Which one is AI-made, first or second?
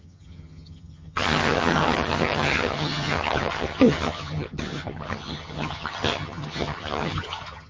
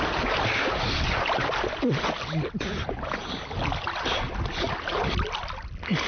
first